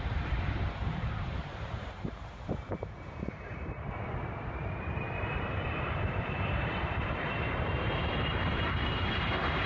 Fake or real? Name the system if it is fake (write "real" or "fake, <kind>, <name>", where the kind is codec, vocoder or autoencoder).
fake, vocoder, BigVGAN v2